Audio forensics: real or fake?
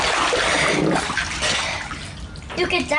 real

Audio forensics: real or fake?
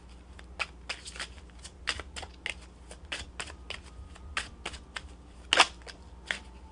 real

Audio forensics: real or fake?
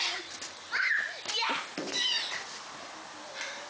real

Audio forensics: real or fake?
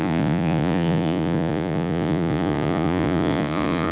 fake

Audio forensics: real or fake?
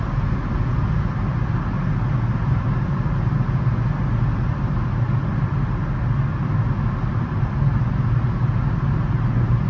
real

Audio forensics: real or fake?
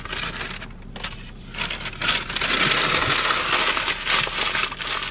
real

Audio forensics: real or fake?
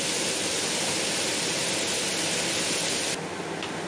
real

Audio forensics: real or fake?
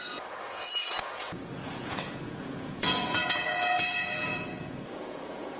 fake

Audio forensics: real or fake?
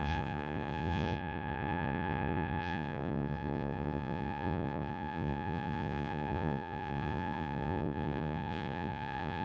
fake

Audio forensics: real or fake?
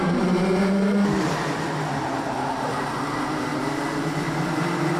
real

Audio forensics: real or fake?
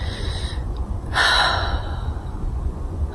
fake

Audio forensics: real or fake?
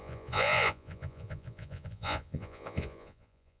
fake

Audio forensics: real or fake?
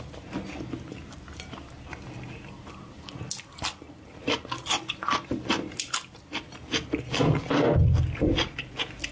real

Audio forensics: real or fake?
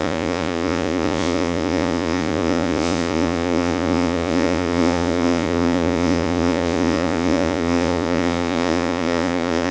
fake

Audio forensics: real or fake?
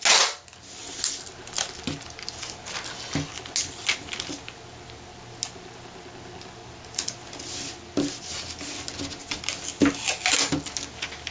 real